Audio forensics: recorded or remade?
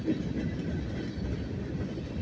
recorded